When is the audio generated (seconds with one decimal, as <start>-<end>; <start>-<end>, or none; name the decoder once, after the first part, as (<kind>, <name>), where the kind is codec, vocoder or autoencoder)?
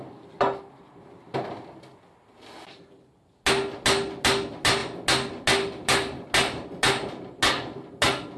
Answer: none